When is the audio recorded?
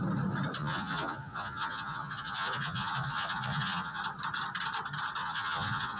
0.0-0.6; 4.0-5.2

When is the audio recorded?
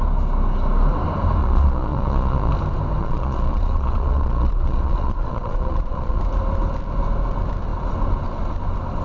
0.0-1.4; 2.5-3.0; 6.2-9.0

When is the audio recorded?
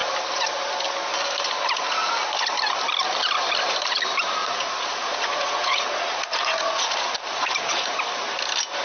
0.0-4.4; 7.6-8.8